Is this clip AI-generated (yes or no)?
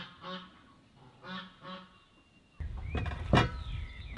no